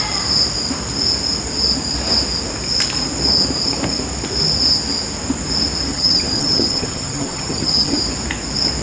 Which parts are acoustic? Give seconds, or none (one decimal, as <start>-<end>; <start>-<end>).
0.0-5.9; 8.0-8.8